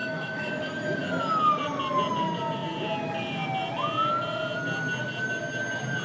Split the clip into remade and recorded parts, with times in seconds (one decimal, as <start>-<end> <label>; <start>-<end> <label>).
0.0-0.6 remade; 0.6-6.0 recorded